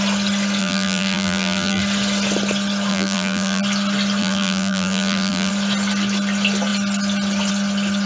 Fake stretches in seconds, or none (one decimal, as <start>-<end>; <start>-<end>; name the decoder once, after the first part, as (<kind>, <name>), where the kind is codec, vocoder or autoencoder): 0.6-1.8 (vocoder, BigVGAN v2); 2.9-3.6; 4.2-5.5